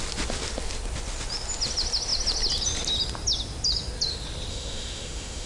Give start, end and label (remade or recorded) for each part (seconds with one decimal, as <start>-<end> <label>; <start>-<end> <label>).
0.0-4.5 recorded; 4.5-5.5 remade